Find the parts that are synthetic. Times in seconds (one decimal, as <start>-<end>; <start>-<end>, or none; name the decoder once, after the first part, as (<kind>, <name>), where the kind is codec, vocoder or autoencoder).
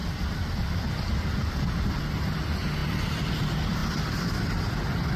none